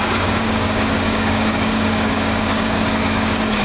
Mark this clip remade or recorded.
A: remade